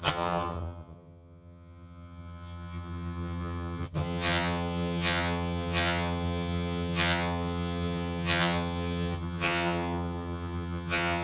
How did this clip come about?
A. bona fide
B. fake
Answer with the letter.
B